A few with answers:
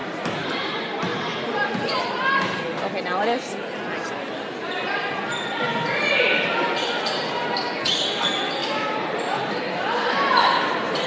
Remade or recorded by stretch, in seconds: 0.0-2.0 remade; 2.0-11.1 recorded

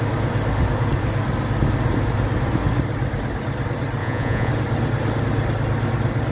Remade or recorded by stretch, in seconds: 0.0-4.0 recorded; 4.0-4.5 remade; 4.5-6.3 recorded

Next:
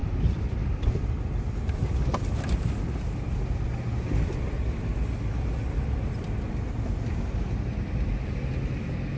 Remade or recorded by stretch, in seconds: 0.0-9.2 recorded

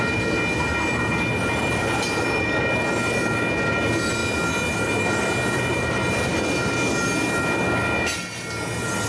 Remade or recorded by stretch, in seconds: 0.0-1.8 recorded; 1.8-2.5 remade; 2.5-5.7 recorded; 5.7-6.3 remade; 6.3-9.1 recorded

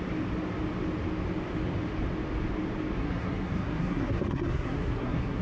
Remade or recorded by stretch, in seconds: 0.0-3.0 recorded; 3.0-5.4 remade